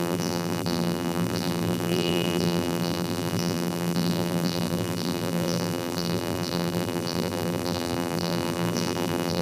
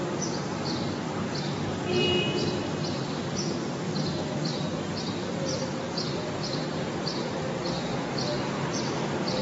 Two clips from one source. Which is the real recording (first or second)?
second